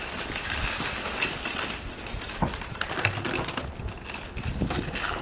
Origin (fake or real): fake